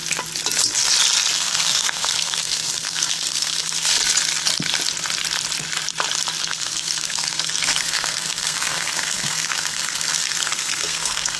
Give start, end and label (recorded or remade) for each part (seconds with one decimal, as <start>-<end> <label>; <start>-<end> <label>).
0.0-1.3 recorded; 1.3-4.0 remade; 4.0-6.4 recorded; 6.4-11.4 remade